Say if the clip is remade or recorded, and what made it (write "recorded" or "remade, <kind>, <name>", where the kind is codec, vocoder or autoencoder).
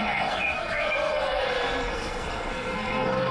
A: remade, codec, SNAC